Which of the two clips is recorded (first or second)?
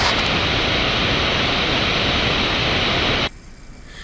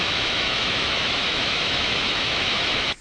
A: first